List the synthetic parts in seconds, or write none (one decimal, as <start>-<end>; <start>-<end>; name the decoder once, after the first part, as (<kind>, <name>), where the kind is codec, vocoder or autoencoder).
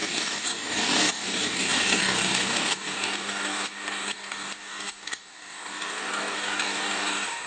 0.0-7.5 (codec, DAC)